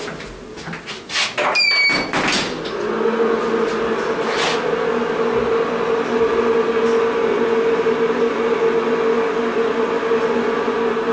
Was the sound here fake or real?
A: real